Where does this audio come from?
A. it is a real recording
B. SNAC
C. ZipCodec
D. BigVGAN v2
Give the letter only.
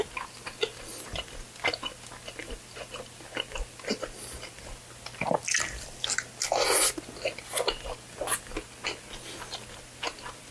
A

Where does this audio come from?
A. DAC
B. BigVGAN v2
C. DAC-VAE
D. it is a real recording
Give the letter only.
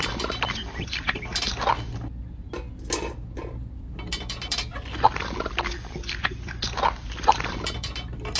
D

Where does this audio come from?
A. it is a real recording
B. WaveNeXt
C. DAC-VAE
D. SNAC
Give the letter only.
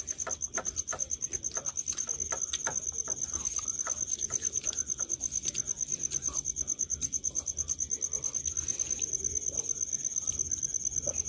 A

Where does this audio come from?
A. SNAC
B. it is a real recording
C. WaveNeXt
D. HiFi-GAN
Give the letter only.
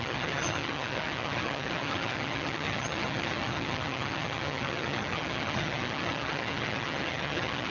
D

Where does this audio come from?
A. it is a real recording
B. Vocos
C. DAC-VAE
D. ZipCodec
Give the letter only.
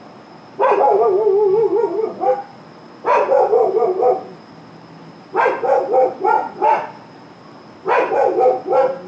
A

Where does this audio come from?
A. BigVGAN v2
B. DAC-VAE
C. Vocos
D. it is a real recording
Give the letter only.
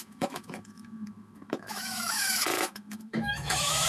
B